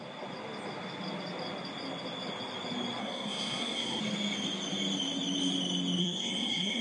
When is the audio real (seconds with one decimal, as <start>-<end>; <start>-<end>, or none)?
0.0-3.0; 4.0-6.0